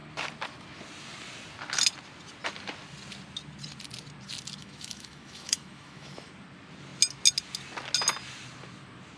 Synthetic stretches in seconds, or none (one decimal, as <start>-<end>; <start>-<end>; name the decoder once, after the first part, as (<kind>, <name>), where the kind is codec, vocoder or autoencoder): 4.6-6.3 (autoencoder, DAC-VAE)

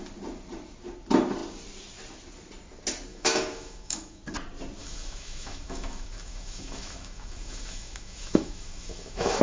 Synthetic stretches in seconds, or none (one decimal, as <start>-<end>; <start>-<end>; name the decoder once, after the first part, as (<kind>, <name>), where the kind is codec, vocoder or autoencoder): 3.1-4.2 (autoencoder, DAC-VAE); 4.8-9.4

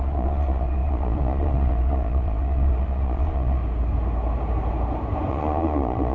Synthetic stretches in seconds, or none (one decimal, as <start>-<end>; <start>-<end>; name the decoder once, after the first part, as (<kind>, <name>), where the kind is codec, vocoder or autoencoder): 0.0-3.6 (vocoder, Vocos); 5.3-6.1

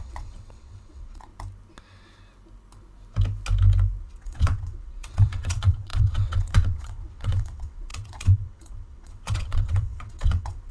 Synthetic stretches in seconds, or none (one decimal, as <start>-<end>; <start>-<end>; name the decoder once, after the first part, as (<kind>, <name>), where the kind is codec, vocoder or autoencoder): 0.0-1.3 (vocoder, WaveNeXt); 4.0-10.7

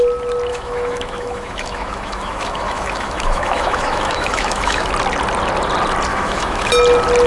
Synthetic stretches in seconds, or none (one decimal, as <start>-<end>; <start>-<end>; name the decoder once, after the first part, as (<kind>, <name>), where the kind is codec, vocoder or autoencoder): 0.5-4.9 (autoencoder, DAC-VAE); 6.1-6.7